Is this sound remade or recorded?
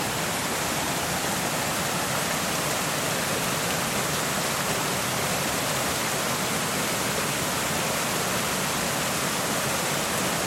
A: recorded